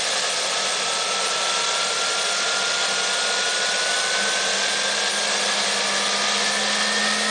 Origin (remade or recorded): recorded